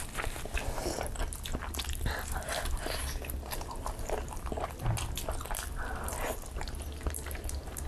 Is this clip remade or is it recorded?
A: recorded